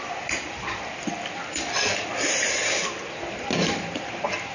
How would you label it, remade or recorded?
recorded